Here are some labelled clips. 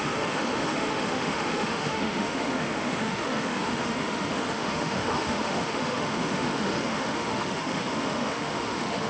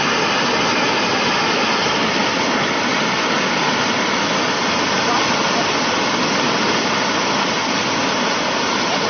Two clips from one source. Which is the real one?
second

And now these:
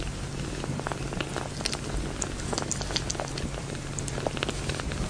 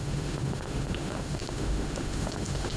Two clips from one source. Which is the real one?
first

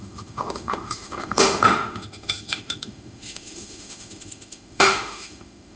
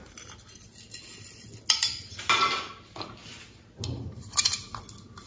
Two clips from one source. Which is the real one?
second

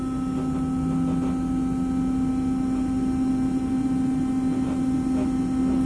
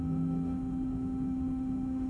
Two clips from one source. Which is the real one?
first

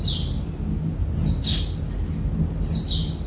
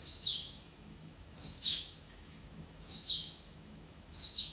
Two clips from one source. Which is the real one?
first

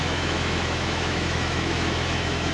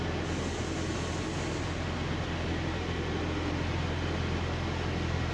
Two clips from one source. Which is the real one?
second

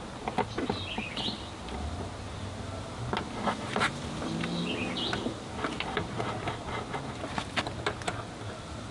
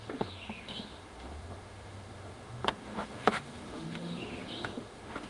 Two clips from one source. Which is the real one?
first